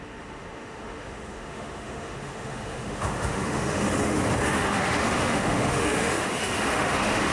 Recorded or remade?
remade